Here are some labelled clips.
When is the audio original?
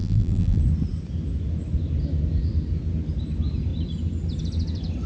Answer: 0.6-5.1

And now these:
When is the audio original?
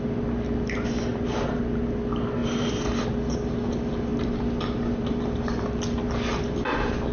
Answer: 0.0-1.1; 1.6-2.4; 3.0-7.1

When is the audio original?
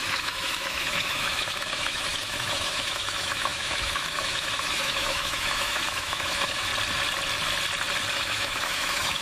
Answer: 6.7-8.1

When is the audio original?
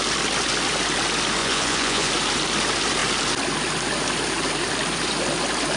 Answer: 0.0-1.4; 2.1-5.8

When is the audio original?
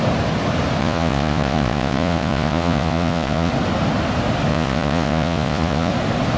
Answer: 0.0-0.8; 3.5-4.5; 5.9-6.4